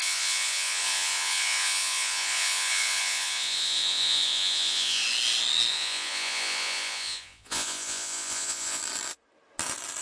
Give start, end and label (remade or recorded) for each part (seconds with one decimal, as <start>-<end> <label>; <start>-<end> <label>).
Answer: 0.0-5.0 remade; 5.0-5.7 recorded; 5.7-8.8 remade; 8.8-10.0 recorded